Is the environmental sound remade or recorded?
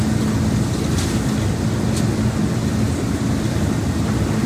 recorded